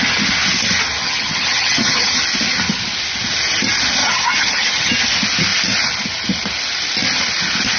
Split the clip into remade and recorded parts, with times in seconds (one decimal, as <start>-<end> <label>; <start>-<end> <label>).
0.0-1.0 recorded; 1.0-2.2 remade; 2.2-4.0 recorded; 4.0-4.9 remade; 4.9-7.8 recorded